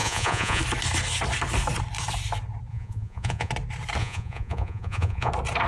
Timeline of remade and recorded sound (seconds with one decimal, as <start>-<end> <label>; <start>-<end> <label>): 0.0-0.6 remade; 0.6-2.7 recorded; 2.7-3.5 remade; 3.5-4.0 recorded; 4.0-5.3 remade; 5.3-5.7 recorded